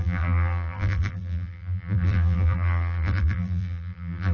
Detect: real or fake fake